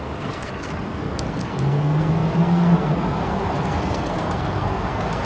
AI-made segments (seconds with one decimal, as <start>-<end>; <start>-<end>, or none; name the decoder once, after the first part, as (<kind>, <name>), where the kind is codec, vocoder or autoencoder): 0.0-5.3 (codec, SNAC)